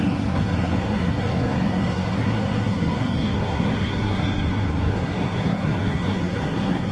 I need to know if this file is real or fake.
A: fake